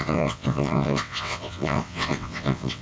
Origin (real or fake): fake